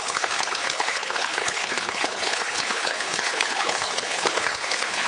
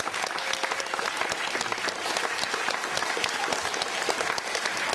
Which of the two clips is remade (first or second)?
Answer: first